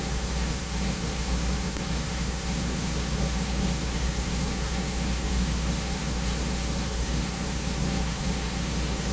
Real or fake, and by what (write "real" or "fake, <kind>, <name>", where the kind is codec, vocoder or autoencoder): fake, codec, SNAC